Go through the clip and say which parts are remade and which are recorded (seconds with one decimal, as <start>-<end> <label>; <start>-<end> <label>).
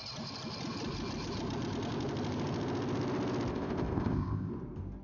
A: 0.0-3.5 recorded; 3.5-4.5 remade; 4.5-5.0 recorded